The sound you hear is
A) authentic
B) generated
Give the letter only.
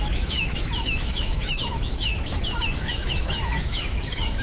B